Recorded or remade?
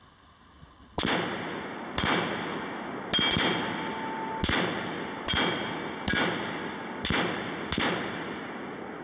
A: recorded